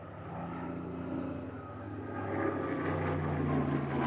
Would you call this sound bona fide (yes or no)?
yes